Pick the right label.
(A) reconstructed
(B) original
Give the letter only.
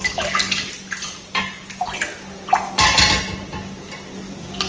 B